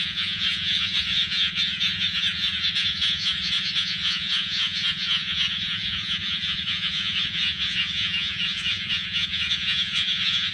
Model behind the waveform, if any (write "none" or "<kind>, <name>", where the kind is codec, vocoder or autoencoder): vocoder, Vocos